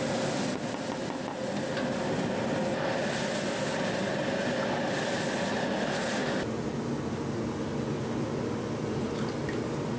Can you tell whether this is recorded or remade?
recorded